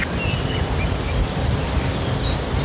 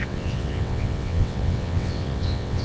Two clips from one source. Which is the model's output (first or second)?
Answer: second